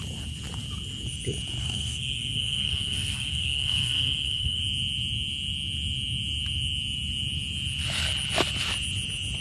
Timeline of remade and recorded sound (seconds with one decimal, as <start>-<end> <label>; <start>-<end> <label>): 0.0-1.6 recorded; 1.6-4.6 remade; 4.6-9.4 recorded